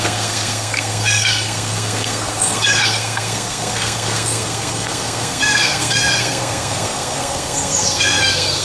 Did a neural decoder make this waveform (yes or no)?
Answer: yes